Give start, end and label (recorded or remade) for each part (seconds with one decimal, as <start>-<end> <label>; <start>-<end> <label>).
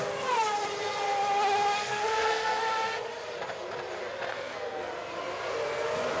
0.0-1.8 recorded; 1.8-2.6 remade; 2.6-4.3 recorded; 4.3-4.9 remade; 4.9-6.2 recorded